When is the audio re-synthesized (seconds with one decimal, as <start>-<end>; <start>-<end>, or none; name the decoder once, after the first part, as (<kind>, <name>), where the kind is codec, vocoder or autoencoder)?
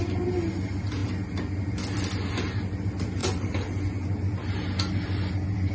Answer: 3.2-3.8 (vocoder, BigVGAN v2)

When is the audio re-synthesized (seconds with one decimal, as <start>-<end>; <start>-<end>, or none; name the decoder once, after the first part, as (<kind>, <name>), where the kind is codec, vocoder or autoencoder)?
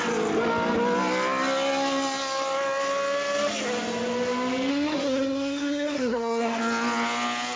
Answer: 4.7-6.6 (codec, SNAC)